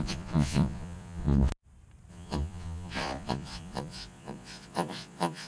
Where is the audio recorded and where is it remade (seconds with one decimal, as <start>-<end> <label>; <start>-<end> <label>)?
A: 0.0-1.5 remade; 1.5-2.1 recorded; 2.1-5.5 remade